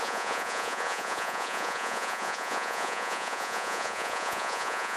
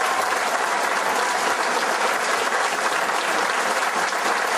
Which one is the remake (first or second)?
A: first